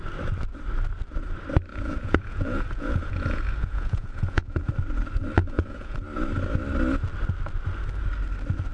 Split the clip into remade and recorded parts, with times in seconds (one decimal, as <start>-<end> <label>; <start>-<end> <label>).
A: 0.0-1.7 recorded; 1.7-4.7 remade; 4.7-5.4 recorded; 5.4-6.0 remade; 6.0-8.7 recorded